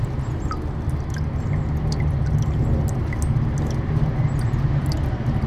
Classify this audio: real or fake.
real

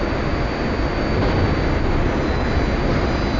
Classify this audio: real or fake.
real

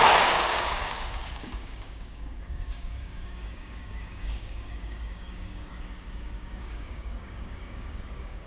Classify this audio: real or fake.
fake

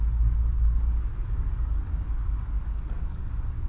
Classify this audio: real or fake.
fake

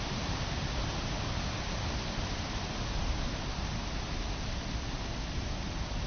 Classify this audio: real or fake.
real